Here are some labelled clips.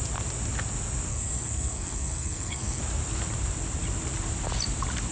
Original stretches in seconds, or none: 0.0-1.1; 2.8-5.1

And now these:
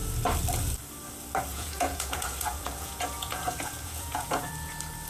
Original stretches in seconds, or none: 0.0-1.5; 4.5-5.1